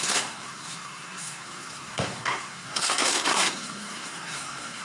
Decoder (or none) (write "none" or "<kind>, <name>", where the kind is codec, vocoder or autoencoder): codec, SNAC